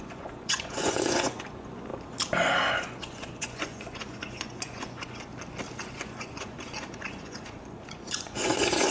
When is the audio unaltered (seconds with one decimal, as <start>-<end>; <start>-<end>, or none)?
1.9-2.7; 5.3-5.8